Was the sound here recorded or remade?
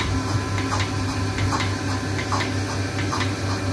recorded